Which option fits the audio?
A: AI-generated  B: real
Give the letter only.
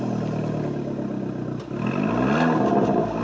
B